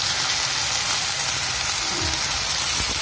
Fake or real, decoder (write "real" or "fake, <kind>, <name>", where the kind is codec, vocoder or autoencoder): real